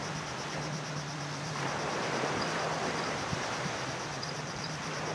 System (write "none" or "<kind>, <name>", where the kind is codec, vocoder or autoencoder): vocoder, BigVGAN v2